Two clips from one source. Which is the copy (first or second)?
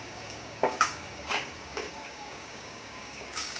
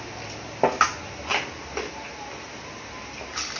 first